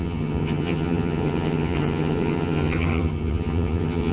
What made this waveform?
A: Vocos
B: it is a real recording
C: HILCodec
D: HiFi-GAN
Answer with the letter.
D